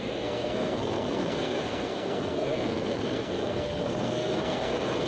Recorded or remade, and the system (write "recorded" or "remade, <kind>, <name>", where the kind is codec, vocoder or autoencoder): remade, codec, SNAC